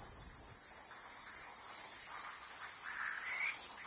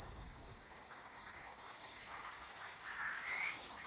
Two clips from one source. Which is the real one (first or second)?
first